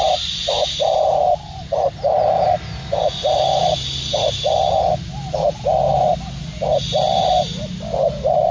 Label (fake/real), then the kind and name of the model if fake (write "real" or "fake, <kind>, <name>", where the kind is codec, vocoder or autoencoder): real